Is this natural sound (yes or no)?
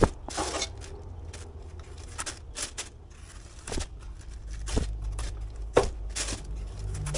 yes